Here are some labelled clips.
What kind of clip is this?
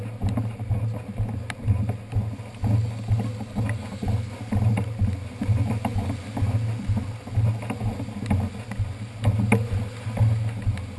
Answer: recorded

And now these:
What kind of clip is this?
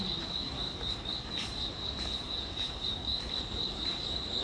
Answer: remade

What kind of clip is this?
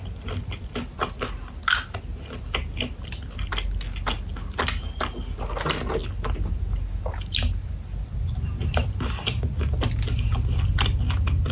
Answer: recorded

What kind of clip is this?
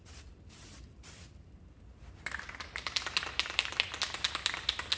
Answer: recorded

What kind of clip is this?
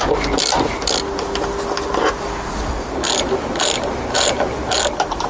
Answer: recorded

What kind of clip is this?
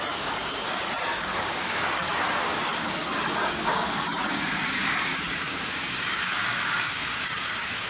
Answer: remade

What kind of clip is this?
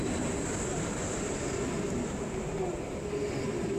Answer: recorded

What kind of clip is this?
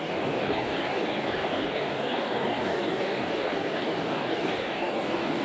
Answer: remade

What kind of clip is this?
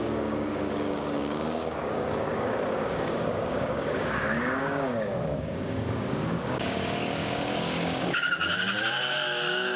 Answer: remade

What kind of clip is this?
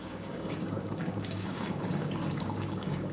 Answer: remade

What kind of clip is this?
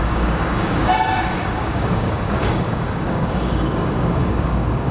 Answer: remade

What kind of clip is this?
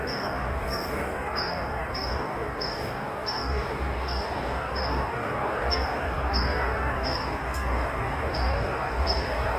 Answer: remade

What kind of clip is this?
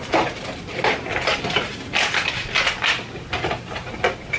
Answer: recorded